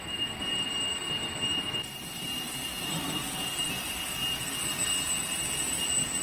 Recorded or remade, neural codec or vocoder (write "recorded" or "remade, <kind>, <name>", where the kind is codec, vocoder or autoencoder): remade, vocoder, BigVGAN v2